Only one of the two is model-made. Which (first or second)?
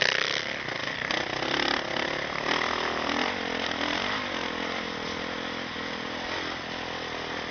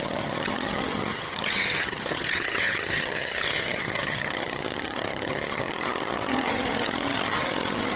second